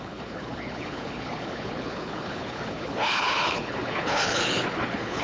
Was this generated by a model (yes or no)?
yes